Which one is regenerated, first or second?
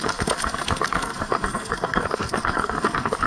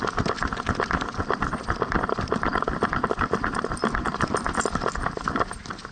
first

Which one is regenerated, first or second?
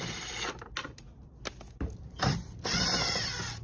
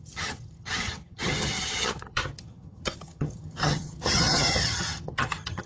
second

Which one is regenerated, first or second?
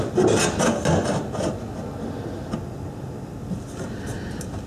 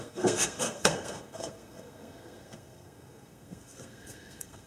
second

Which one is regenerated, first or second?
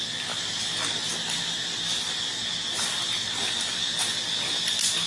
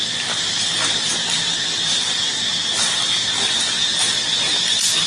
second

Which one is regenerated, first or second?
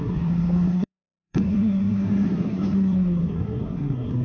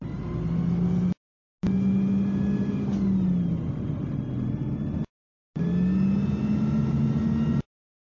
first